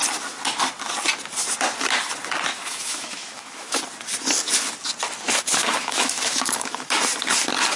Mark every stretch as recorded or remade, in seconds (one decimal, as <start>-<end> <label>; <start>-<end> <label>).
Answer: 0.0-2.5 recorded; 2.5-3.8 remade; 3.8-5.6 recorded; 5.6-6.9 remade; 6.9-7.8 recorded